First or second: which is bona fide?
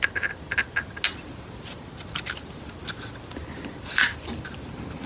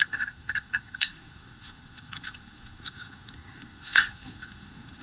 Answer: first